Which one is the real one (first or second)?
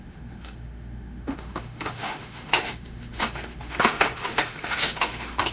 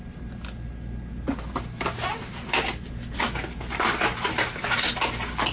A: second